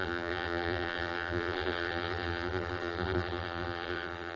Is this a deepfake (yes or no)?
yes